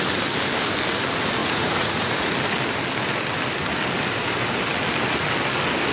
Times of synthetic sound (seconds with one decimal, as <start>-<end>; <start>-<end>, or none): 1.4-2.3